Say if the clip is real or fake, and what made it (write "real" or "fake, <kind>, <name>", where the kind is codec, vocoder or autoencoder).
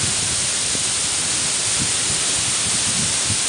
real